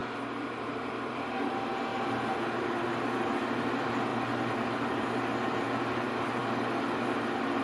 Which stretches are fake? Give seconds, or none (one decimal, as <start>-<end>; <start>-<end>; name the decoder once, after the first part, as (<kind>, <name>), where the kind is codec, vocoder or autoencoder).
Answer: 0.0-1.5 (vocoder, BigVGAN v2)